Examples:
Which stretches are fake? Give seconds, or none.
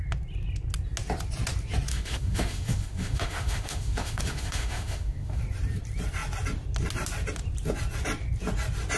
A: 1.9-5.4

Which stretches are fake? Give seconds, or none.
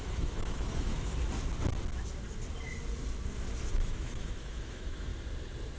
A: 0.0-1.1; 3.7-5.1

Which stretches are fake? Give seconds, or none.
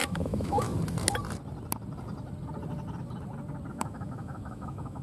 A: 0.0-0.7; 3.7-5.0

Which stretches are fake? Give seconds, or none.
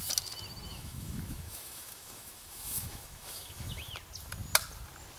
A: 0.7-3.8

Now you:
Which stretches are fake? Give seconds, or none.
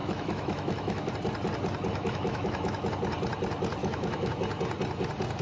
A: 0.0-1.1; 1.9-2.9; 3.8-4.3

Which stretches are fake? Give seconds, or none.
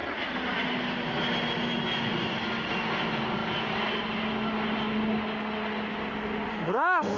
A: 6.5-7.2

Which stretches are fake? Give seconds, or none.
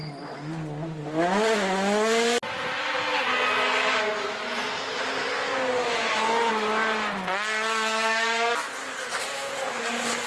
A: 5.8-6.5